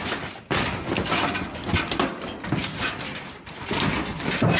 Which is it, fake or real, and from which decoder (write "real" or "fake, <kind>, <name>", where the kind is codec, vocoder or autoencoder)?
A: real